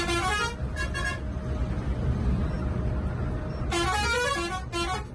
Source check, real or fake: real